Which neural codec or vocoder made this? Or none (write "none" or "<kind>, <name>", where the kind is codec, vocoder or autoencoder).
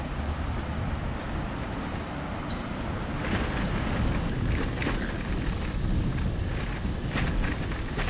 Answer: none